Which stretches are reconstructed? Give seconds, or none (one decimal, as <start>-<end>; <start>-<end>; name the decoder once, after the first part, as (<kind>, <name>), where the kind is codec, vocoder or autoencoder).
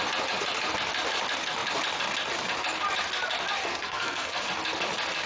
3.7-4.4 (codec, SNAC)